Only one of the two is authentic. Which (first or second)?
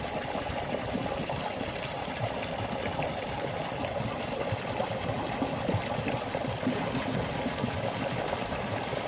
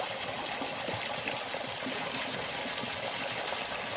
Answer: second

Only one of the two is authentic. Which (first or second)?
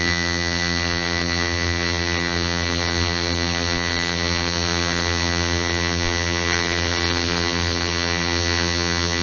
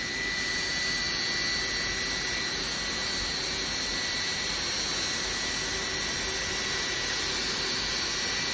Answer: second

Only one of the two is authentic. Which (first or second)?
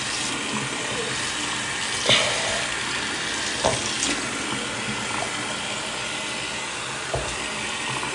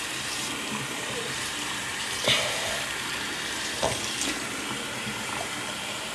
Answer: first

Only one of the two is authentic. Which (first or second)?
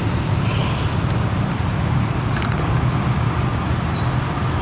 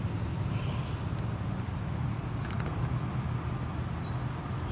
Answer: second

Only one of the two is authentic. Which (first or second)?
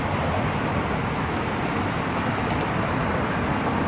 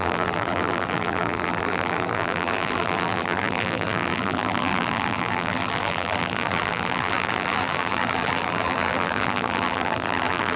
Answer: first